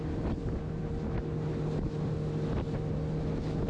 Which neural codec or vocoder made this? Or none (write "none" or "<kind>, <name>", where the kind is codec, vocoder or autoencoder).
none